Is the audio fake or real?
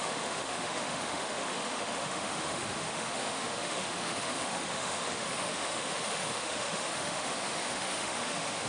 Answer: fake